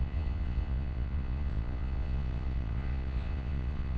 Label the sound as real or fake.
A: fake